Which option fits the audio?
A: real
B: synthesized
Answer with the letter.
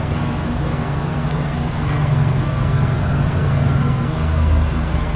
B